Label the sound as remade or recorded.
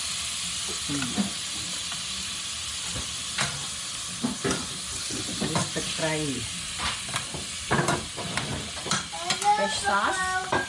recorded